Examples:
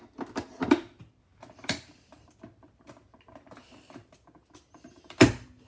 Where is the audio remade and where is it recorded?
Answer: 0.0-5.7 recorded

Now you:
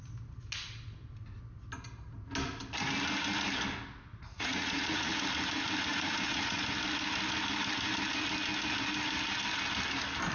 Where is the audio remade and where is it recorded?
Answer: 0.0-4.1 recorded; 4.1-5.2 remade; 5.2-5.9 recorded; 5.9-6.6 remade; 6.6-10.3 recorded

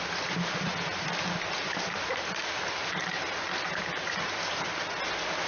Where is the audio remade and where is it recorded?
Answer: 0.0-5.5 recorded

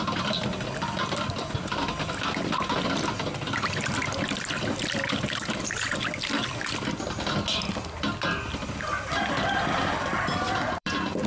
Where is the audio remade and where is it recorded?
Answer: 0.0-4.0 recorded; 4.0-6.0 remade; 6.0-10.1 recorded; 10.1-11.3 remade

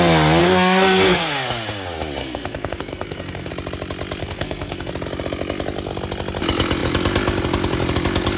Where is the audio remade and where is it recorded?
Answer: 0.0-0.4 recorded; 0.4-1.3 remade; 1.3-2.2 recorded; 2.2-3.5 remade; 3.5-4.2 recorded; 4.2-4.9 remade; 4.9-8.4 recorded